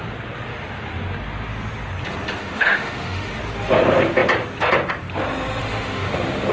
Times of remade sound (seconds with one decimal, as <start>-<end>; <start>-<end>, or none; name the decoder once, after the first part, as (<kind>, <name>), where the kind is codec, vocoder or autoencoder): 2.4-3.4 (autoencoder, DAC-VAE); 5.6-6.5